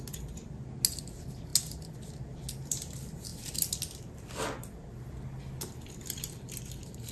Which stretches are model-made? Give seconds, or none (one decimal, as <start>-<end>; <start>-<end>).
none